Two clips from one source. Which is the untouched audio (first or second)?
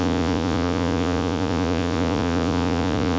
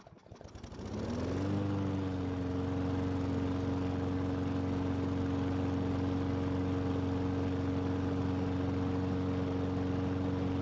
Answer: second